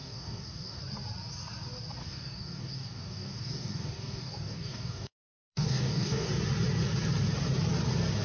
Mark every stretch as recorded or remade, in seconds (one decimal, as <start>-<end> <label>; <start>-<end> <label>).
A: 0.0-0.8 remade; 0.8-2.0 recorded; 2.0-6.3 remade; 6.3-8.2 recorded